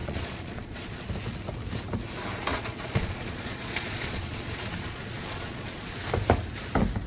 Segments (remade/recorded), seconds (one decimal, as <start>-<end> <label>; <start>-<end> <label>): 0.0-1.1 remade; 1.1-2.5 recorded; 2.5-6.0 remade; 6.0-7.1 recorded